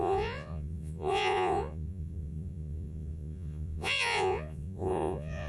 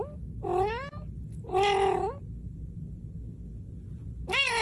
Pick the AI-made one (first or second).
first